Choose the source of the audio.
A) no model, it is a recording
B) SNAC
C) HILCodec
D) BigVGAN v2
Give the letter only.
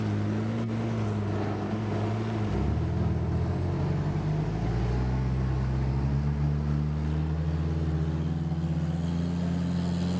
A